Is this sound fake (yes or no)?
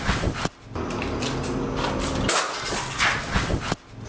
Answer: no